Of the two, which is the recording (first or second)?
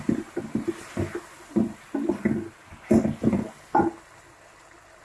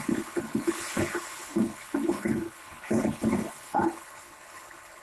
first